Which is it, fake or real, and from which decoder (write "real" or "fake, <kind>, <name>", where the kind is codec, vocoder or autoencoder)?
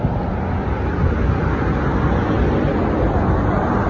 real